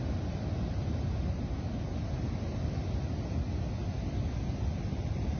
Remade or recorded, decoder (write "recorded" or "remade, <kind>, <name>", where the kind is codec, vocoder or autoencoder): recorded